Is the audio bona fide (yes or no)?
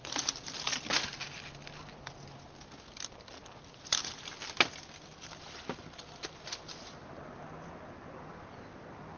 yes